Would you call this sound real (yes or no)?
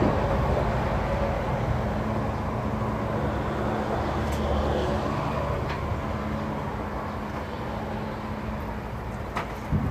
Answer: yes